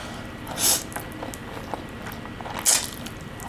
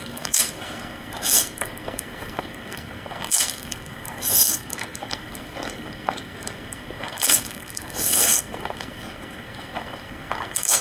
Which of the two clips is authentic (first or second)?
first